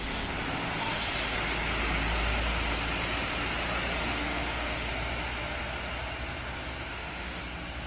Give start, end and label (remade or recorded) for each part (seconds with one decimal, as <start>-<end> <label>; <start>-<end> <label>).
0.0-4.1 recorded; 4.1-4.9 remade; 4.9-6.9 recorded; 6.9-7.4 remade; 7.4-7.9 recorded